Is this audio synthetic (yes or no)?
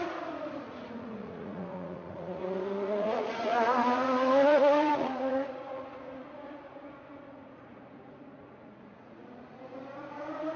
yes